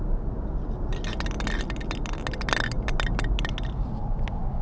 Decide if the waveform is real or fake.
real